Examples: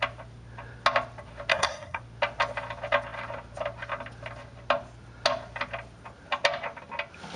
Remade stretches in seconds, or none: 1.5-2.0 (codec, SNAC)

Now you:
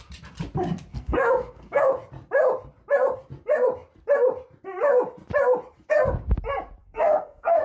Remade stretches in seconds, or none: 0.9-1.9 (codec, SNAC); 6.8-7.6

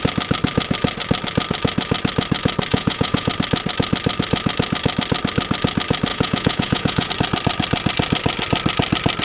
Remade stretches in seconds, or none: 2.7-3.3 (vocoder, Vocos); 6.1-7.1

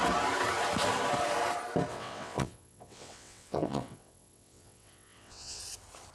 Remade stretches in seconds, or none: 1.9-5.6 (vocoder, WaveNeXt)

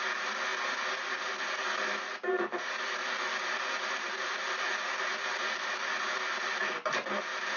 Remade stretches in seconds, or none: 6.6-7.6 (vocoder, BigVGAN v2)